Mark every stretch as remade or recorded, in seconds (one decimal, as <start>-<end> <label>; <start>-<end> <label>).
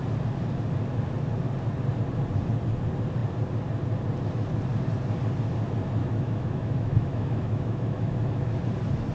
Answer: 0.0-6.0 recorded; 6.0-8.3 remade; 8.3-9.1 recorded